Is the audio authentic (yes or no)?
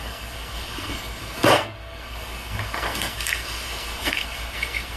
no